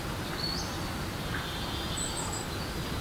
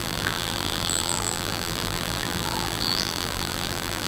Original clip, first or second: first